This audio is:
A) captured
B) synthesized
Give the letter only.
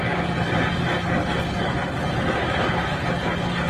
A